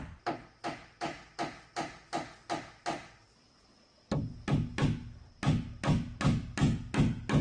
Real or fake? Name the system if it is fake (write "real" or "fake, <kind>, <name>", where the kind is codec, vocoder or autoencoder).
real